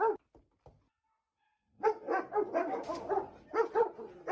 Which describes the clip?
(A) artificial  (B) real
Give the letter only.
B